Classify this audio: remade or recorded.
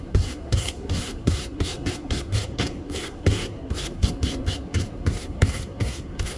remade